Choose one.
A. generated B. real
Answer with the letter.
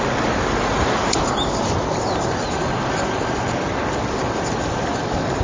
B